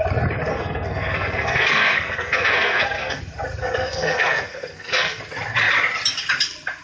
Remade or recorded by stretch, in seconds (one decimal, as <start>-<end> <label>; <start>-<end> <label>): 0.0-0.5 recorded; 0.5-3.2 remade; 3.2-3.6 recorded; 3.6-5.2 remade; 5.2-6.8 recorded